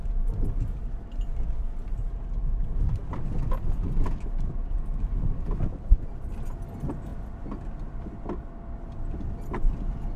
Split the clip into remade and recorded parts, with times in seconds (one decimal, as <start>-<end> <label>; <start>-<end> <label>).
0.0-10.2 recorded